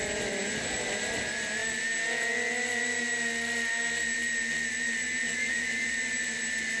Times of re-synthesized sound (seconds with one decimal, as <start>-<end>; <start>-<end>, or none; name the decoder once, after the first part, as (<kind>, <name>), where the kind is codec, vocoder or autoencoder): none